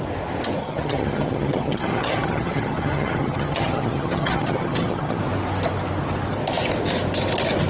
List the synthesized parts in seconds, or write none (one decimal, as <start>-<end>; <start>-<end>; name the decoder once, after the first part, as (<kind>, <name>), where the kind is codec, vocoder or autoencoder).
0.6-5.2 (vocoder, HiFi-GAN)

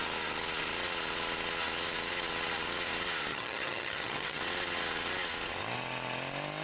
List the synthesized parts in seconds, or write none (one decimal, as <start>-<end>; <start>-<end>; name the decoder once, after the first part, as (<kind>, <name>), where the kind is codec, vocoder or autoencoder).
3.3-4.4 (vocoder, HiFi-GAN)

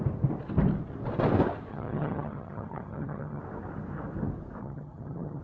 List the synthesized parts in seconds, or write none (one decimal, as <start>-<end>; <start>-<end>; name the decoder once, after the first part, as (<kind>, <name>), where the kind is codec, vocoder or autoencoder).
1.7-3.4 (vocoder, HiFi-GAN); 4.6-5.4

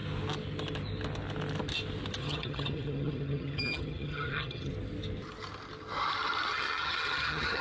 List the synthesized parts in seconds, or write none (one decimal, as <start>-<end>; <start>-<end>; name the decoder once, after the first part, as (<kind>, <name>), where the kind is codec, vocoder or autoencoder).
2.2-4.7 (vocoder, HiFi-GAN); 6.5-7.6

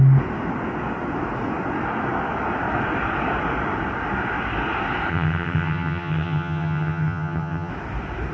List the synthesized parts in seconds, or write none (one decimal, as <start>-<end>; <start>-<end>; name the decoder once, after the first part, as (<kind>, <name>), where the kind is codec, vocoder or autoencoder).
5.1-7.7 (vocoder, HiFi-GAN)

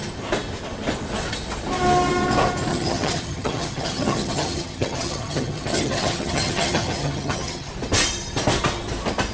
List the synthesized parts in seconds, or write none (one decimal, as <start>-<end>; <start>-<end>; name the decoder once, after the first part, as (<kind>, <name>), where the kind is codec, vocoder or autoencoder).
2.7-7.7 (vocoder, HiFi-GAN)

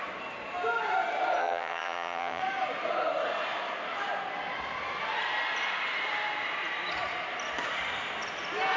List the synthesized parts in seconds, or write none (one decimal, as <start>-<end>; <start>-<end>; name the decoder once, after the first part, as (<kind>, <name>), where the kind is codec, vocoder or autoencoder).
1.4-2.4 (vocoder, HiFi-GAN)

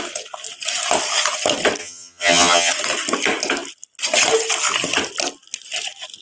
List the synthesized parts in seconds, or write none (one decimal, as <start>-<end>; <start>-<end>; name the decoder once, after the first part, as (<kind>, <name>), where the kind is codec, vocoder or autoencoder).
1.8-2.7 (vocoder, HiFi-GAN)